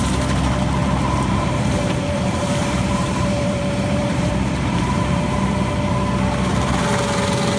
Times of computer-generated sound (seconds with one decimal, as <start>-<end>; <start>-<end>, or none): 0.8-5.4